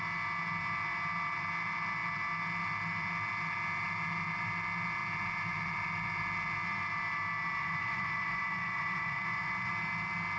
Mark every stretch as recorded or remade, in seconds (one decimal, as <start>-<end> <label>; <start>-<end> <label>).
0.0-7.6 recorded; 7.6-9.7 remade; 9.7-10.4 recorded